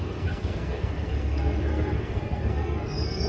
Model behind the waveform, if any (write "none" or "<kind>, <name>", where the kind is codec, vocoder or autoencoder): codec, SNAC